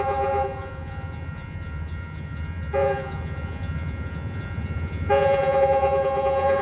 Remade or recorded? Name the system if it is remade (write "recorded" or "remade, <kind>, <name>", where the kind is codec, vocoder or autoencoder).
remade, vocoder, Vocos